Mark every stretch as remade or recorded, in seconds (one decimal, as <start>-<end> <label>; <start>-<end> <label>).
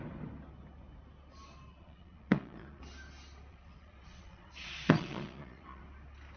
0.0-1.7 recorded; 1.7-2.8 remade; 2.8-3.5 recorded; 3.5-5.8 remade; 5.8-6.4 recorded